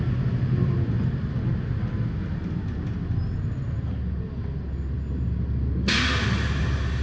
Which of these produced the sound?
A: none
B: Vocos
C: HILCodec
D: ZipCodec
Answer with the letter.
A